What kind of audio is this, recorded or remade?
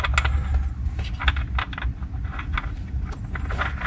recorded